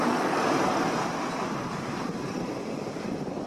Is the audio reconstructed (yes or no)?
no